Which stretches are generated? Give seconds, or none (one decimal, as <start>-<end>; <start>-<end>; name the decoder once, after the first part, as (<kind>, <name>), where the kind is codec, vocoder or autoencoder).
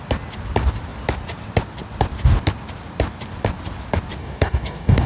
4.2-5.1 (codec, DAC)